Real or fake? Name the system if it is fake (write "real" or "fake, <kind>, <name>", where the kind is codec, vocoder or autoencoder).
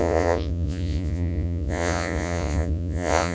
fake, vocoder, Vocos